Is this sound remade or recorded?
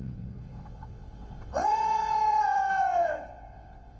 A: remade